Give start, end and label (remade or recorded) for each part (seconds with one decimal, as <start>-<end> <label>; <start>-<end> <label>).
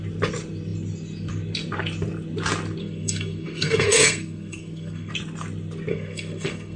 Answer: 0.0-2.8 recorded; 2.8-5.1 remade; 5.1-5.9 recorded; 5.9-6.8 remade